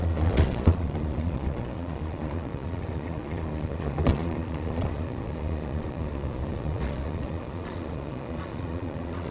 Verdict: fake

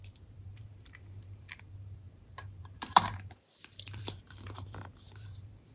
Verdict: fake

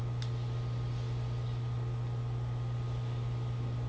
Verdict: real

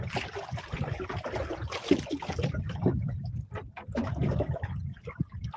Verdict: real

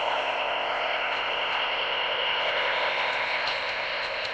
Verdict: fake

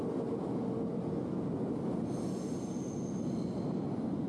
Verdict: real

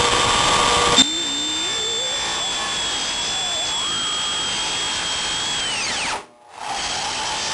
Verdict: real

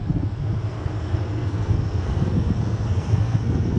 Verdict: fake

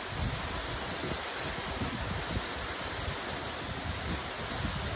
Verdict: real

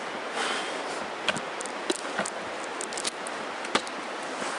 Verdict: real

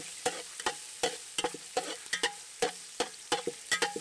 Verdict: real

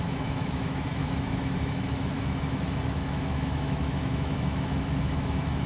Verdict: fake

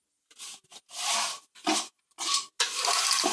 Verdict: real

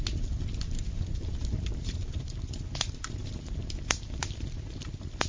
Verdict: real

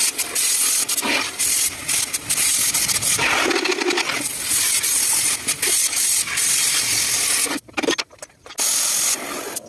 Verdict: real